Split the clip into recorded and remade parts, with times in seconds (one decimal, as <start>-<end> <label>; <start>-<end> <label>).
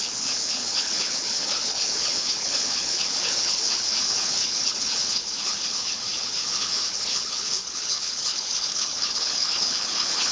0.0-10.3 remade